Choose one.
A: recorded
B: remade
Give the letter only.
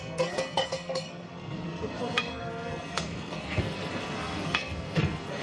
B